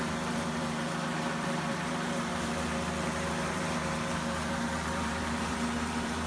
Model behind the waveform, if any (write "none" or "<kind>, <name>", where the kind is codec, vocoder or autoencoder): vocoder, BigVGAN v2